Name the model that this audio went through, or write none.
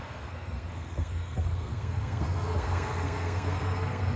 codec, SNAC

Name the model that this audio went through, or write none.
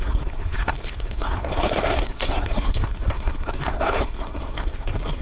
codec, SNAC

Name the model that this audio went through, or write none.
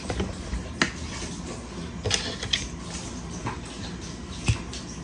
none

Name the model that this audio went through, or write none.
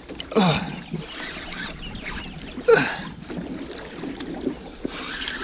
none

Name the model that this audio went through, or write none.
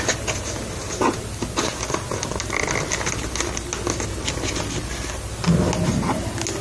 none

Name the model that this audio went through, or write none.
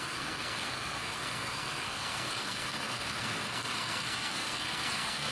codec, SNAC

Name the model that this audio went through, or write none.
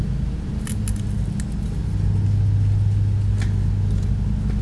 none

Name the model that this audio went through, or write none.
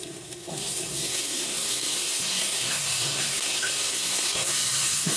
codec, SNAC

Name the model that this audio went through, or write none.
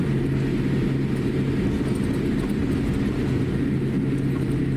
none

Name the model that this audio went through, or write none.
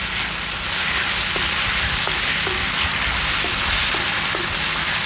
none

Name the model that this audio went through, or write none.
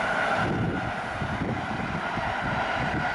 none